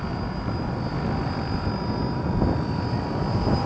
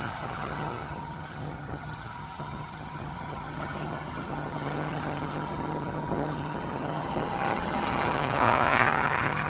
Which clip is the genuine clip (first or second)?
first